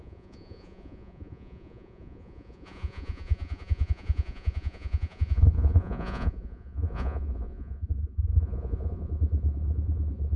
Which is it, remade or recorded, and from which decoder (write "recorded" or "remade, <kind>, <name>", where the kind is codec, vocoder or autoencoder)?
remade, vocoder, Vocos